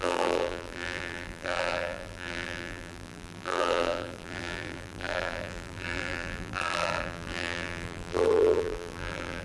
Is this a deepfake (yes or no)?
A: yes